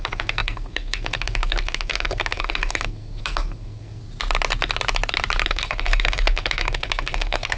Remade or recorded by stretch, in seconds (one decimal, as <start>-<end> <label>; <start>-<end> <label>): 0.0-4.0 remade; 4.0-5.5 recorded; 5.5-7.6 remade